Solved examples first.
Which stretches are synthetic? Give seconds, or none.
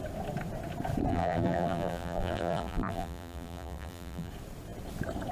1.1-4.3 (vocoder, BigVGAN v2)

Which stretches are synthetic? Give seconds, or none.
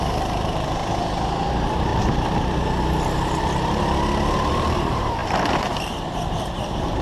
0.0-0.8 (vocoder, BigVGAN v2); 1.5-1.9; 4.5-7.0